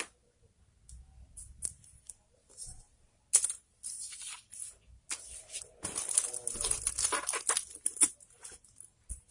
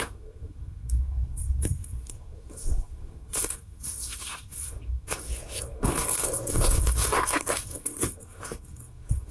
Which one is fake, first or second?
second